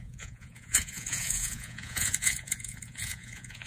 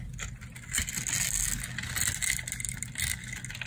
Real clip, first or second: second